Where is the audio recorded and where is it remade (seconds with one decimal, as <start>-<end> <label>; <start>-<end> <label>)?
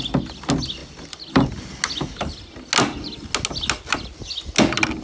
0.0-5.0 recorded